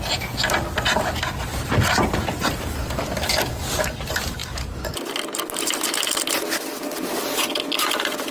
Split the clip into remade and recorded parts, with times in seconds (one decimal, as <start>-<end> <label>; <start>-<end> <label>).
0.0-1.5 recorded; 1.5-3.6 remade; 3.6-8.3 recorded